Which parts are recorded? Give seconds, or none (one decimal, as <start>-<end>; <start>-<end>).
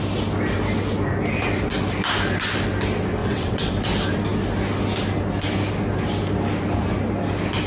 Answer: 0.0-3.2; 3.7-7.7